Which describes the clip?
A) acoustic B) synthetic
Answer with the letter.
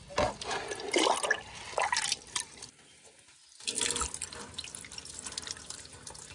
A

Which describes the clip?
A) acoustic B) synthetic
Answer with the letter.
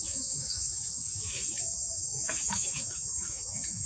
B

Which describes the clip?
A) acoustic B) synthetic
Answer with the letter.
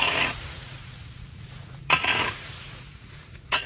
B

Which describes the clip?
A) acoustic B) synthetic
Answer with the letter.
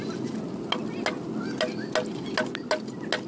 A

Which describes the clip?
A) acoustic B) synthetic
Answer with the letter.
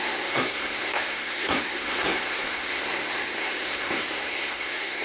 B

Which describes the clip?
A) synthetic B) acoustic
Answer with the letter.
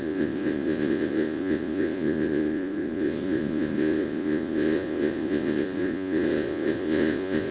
A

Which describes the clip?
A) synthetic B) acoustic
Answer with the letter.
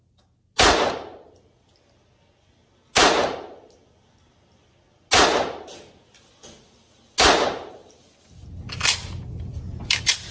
B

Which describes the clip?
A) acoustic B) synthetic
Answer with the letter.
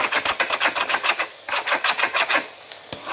A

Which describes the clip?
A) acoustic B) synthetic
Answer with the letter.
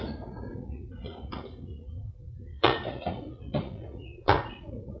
B